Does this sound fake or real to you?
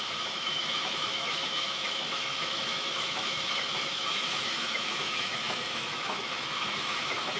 fake